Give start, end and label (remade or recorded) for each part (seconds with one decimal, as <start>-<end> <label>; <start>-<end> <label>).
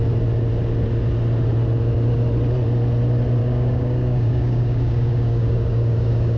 0.0-3.4 recorded; 3.4-6.4 remade